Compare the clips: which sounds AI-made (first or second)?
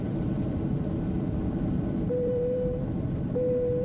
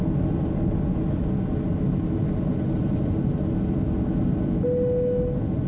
first